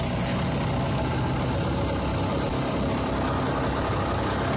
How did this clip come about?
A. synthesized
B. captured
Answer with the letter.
B